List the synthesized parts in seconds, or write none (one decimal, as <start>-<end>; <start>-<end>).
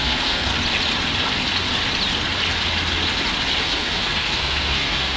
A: 0.0-0.5; 3.6-5.2